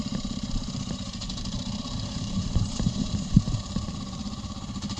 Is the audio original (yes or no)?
no